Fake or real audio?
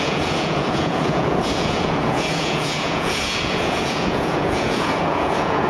fake